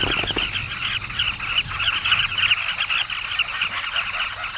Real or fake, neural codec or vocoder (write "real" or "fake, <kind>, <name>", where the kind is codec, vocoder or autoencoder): real